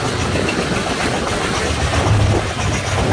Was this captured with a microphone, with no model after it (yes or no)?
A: yes